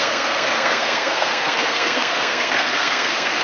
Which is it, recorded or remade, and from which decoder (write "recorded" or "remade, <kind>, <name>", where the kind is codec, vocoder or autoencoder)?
remade, codec, SNAC